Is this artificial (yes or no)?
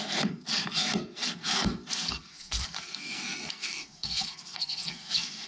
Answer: yes